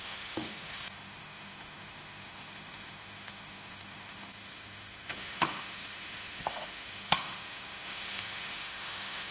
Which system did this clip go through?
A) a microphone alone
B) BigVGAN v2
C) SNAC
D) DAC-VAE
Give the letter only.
D